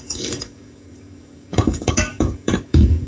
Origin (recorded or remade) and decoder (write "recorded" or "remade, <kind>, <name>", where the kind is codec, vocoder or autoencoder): remade, codec, DAC